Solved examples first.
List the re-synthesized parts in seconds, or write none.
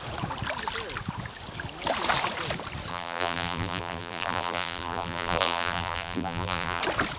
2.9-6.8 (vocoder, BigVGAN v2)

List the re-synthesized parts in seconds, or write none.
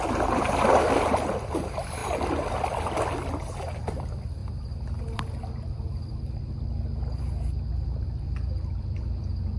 none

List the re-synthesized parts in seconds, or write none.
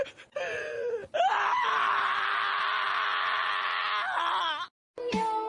1.0-2.6 (vocoder, BigVGAN v2)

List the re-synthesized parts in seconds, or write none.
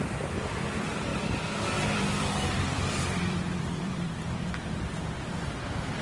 1.1-4.7 (vocoder, BigVGAN v2)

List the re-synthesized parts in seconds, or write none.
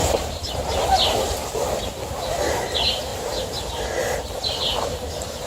0.0-0.9 (vocoder, BigVGAN v2)